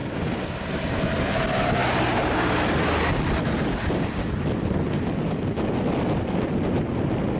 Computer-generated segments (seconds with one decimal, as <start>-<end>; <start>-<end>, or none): none